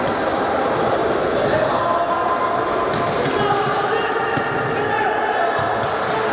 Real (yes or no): yes